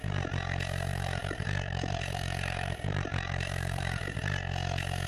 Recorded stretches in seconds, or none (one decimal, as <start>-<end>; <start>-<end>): 0.0-0.9; 4.0-5.1